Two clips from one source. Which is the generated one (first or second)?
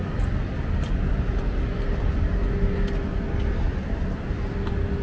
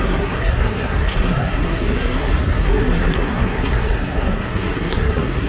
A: second